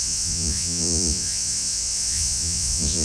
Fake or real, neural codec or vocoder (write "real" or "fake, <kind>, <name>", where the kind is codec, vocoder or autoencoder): fake, vocoder, Vocos